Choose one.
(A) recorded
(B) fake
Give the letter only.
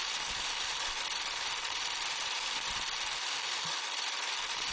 A